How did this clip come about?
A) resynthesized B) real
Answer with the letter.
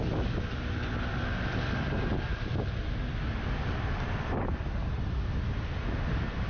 B